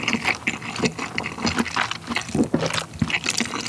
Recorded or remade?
recorded